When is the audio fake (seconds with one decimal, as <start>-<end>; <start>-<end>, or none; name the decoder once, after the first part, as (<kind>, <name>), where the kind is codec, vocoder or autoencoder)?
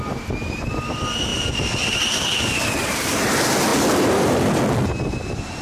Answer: 1.3-3.2 (vocoder, BigVGAN v2); 3.7-4.6